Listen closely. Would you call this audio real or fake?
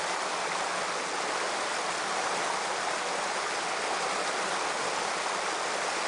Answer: real